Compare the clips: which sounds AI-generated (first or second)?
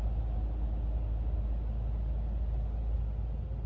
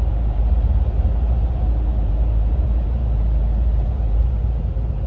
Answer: second